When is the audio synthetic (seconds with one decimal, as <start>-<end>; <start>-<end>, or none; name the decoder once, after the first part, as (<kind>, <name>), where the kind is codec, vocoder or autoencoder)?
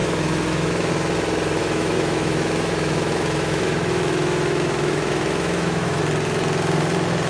0.0-0.9 (autoencoder, DAC-VAE); 1.6-6.0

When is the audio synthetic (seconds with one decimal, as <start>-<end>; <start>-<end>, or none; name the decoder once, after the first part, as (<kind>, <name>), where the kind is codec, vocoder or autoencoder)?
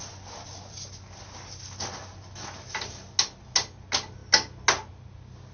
none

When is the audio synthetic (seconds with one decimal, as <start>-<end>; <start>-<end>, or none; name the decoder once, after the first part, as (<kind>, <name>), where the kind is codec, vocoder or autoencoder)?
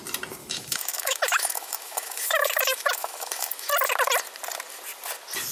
0.4-3.7 (autoencoder, DAC-VAE)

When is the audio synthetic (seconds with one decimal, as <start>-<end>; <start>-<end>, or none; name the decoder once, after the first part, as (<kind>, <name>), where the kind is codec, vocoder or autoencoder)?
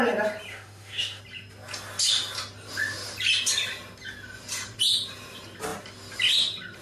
0.5-1.2 (autoencoder, DAC-VAE)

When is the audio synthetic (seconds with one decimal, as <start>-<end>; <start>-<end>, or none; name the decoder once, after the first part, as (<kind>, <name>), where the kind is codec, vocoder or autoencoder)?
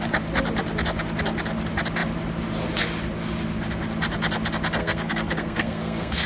4.8-6.3 (codec, SNAC)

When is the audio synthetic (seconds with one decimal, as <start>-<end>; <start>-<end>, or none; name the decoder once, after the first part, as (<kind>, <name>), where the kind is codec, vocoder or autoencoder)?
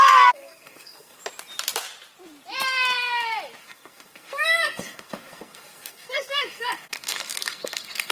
0.0-1.2 (codec, SNAC); 3.6-8.1